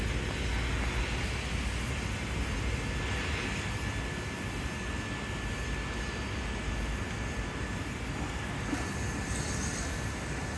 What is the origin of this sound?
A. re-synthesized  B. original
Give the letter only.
B